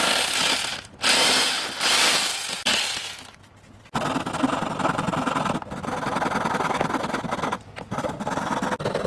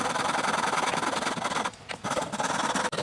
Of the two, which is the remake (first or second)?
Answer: second